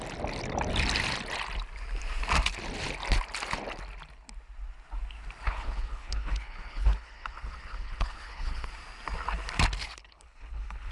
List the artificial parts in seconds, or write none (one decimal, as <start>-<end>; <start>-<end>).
5.5-8.7; 9.8-10.9